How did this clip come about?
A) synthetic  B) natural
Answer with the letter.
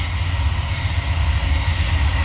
B